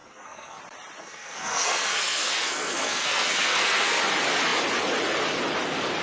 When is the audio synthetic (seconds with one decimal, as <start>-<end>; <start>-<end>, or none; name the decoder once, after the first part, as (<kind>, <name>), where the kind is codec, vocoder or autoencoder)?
0.0-0.6 (codec, SNAC); 1.0-4.0